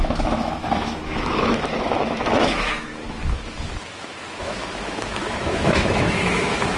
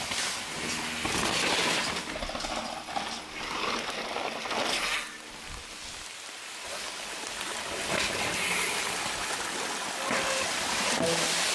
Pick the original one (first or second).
second